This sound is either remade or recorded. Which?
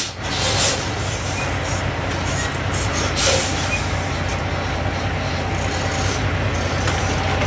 recorded